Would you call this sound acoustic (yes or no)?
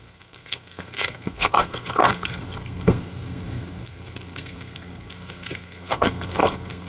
no